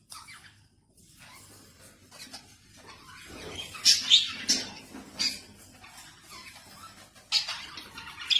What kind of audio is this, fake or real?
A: real